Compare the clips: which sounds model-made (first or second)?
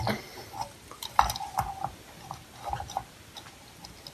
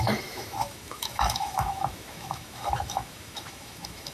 second